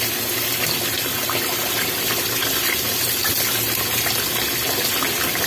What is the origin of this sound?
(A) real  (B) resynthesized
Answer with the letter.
A